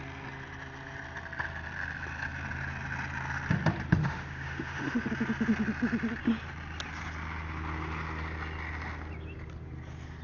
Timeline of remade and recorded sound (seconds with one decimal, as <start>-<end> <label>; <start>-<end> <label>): 0.0-4.0 recorded; 4.0-5.1 remade; 5.1-10.2 recorded